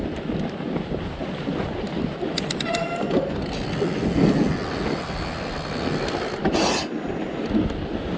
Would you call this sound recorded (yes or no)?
yes